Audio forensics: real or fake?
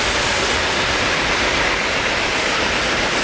fake